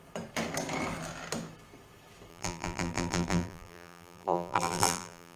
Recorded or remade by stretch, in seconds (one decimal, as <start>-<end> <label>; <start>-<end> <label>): 0.0-2.3 recorded; 2.3-5.4 remade